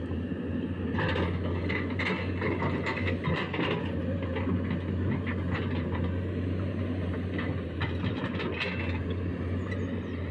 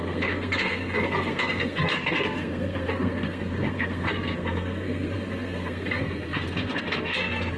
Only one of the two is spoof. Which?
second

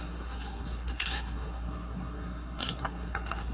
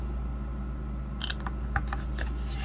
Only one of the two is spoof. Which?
first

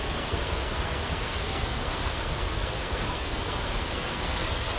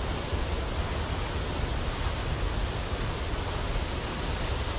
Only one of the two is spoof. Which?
first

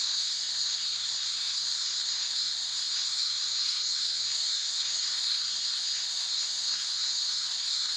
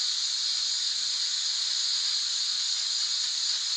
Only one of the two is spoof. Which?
first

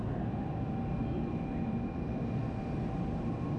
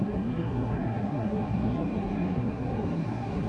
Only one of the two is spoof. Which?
second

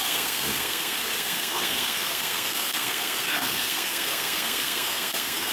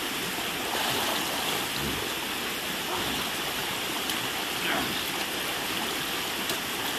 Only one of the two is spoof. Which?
first